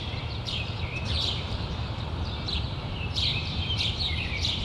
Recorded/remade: remade